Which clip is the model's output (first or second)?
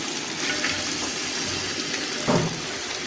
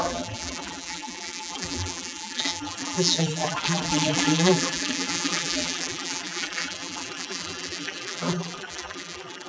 second